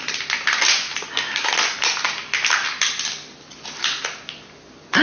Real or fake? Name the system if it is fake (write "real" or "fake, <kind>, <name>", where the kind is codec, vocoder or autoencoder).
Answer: real